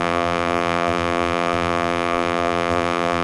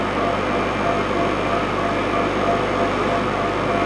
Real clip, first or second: second